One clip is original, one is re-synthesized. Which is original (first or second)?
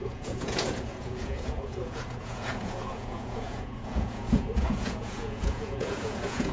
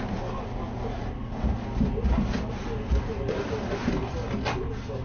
second